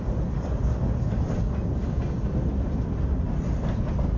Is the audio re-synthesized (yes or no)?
no